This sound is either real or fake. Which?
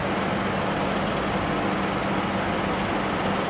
real